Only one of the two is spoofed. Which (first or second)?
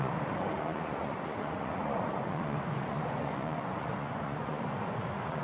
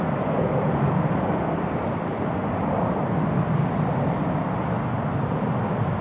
first